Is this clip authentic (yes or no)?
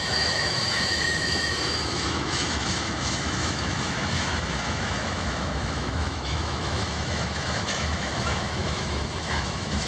no